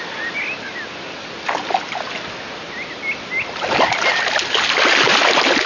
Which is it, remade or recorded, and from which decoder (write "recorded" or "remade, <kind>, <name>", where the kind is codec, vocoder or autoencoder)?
recorded